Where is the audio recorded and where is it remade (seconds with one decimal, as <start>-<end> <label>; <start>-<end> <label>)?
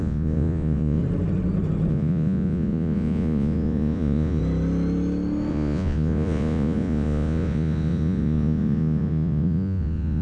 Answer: 0.0-1.0 remade; 1.0-1.9 recorded; 1.9-4.4 remade; 4.4-5.5 recorded; 5.5-10.2 remade